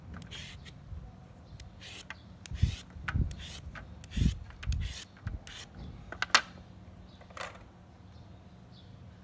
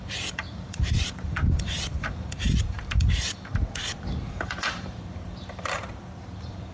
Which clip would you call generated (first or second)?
second